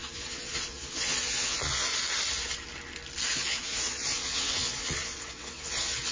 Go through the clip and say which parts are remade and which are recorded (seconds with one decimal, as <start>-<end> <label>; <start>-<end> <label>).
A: 0.0-1.9 remade; 1.9-3.3 recorded; 3.3-6.1 remade